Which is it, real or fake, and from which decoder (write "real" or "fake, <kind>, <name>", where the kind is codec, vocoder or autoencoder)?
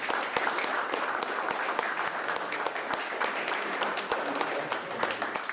real